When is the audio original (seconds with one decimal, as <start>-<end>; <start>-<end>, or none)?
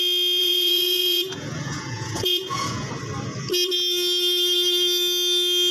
0.0-0.4; 2.9-5.7